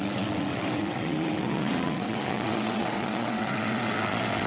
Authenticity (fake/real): fake